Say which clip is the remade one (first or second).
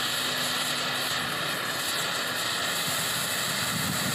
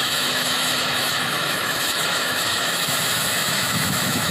second